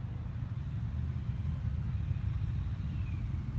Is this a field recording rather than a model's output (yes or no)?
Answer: yes